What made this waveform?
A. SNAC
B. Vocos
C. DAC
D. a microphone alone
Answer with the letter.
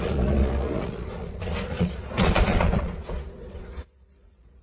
B